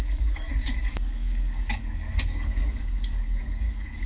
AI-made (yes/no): yes